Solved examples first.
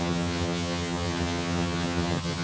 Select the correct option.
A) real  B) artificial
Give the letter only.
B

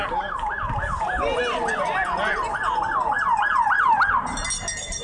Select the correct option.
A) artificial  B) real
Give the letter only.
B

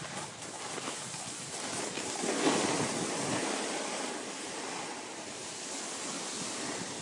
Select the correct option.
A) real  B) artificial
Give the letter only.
A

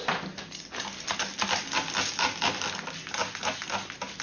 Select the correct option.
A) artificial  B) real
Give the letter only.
B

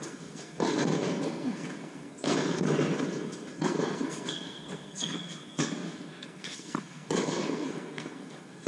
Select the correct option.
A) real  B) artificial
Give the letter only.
B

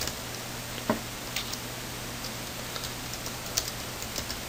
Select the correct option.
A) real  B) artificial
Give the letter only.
A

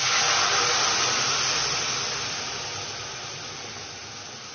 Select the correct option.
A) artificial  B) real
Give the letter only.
B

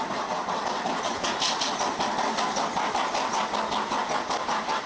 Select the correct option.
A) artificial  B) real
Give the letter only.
B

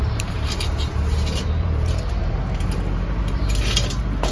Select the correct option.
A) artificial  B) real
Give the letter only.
A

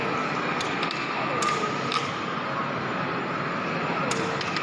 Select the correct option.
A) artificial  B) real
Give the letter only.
B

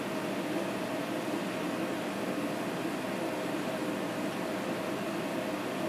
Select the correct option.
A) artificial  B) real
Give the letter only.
B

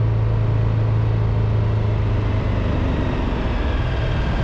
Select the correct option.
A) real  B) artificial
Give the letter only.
A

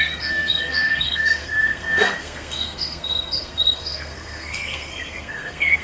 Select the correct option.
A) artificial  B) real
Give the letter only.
A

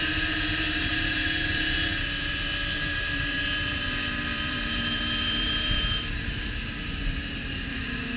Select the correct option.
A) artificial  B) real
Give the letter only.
A